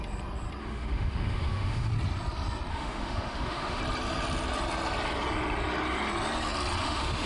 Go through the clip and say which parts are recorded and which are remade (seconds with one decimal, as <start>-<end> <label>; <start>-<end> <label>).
0.0-0.6 recorded; 0.6-1.9 remade; 1.9-2.7 recorded; 2.7-3.8 remade; 3.8-6.8 recorded; 6.8-7.3 remade